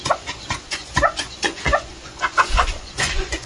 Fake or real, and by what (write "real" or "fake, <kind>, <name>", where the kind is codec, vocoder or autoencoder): fake, vocoder, Vocos